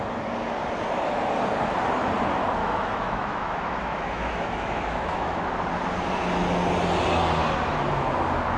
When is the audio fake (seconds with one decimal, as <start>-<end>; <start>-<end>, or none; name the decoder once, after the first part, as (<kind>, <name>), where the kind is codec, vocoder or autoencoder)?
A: 2.6-5.4 (autoencoder, DAC-VAE)